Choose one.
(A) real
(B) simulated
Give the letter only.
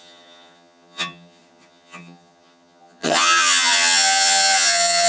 B